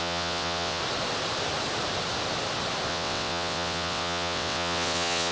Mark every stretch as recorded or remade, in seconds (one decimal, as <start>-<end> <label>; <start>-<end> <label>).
0.0-0.8 remade; 0.8-2.9 recorded; 2.9-5.3 remade